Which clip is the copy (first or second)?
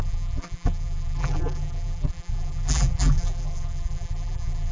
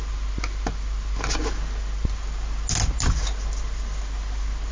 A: first